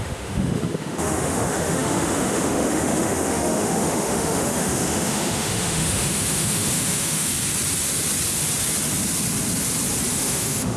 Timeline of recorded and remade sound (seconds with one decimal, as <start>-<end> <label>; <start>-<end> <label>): 0.0-7.3 remade; 7.3-10.1 recorded; 10.1-10.8 remade